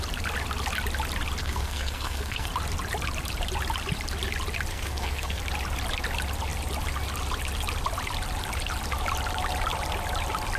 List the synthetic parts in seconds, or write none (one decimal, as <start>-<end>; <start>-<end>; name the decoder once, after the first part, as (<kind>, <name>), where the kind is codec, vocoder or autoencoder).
1.4-2.5 (codec, SNAC); 4.7-5.4